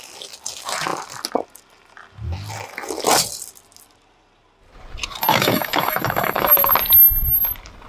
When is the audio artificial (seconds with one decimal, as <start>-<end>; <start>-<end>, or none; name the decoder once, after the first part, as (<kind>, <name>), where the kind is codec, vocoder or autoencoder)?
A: 5.3-6.7 (autoencoder, DAC-VAE)